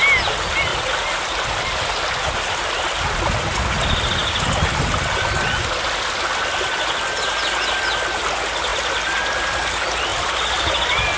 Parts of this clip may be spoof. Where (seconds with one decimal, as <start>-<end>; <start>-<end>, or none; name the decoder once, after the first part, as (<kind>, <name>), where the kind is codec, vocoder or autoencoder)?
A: 10.1-11.2 (vocoder, BigVGAN v2)